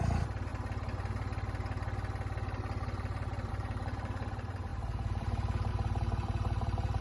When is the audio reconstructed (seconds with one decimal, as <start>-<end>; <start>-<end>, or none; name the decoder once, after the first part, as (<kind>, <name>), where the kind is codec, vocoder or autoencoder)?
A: 0.0-0.5 (vocoder, BigVGAN v2); 3.5-7.0